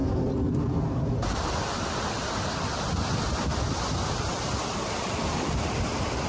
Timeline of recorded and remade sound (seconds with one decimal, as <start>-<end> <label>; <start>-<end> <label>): 0.0-5.3 recorded; 5.3-6.3 remade